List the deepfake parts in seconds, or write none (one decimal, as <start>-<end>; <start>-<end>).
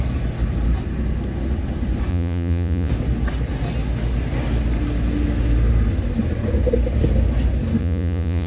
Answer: 2.1-2.9; 7.8-8.5